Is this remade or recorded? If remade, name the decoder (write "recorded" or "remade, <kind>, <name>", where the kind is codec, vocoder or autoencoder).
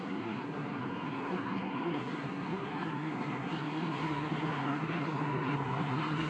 remade, codec, SNAC